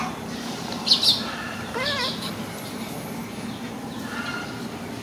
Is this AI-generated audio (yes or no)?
no